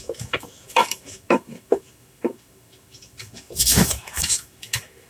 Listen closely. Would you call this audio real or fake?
fake